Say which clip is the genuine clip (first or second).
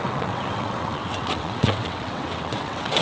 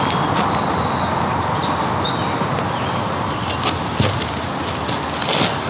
second